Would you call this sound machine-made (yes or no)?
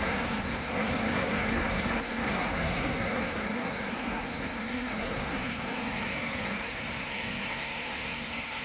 yes